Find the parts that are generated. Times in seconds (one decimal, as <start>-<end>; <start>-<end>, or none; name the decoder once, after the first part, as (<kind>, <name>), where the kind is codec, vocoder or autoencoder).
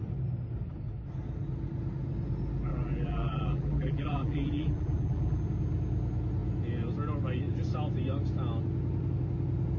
2.7-5.4 (vocoder, BigVGAN v2)